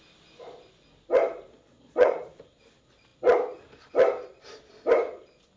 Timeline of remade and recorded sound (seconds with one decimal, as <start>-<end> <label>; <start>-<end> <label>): 0.0-1.5 recorded; 1.5-2.3 remade; 2.3-5.6 recorded